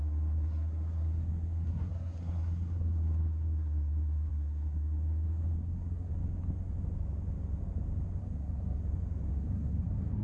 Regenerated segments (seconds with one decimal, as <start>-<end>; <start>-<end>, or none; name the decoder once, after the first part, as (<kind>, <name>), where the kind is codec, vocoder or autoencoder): 0.0-6.1 (codec, SNAC); 8.2-8.8; 9.3-10.2